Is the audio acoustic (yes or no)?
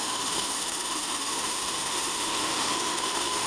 no